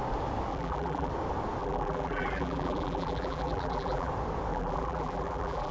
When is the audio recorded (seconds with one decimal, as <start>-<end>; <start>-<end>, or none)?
0.0-0.5; 1.1-1.6; 4.1-4.5

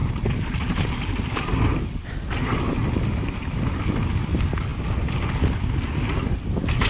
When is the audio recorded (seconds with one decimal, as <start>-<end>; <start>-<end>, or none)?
0.0-6.9

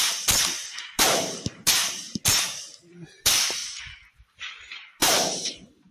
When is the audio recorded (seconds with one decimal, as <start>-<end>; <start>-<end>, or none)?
1.8-3.1; 3.6-4.1

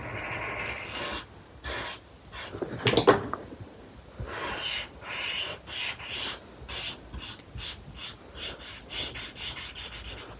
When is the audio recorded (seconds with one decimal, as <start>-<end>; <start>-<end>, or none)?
0.0-3.4; 6.5-10.4